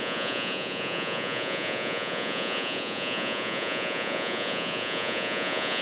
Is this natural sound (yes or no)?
no